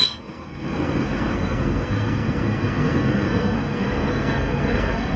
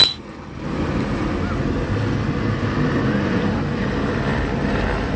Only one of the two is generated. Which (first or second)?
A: first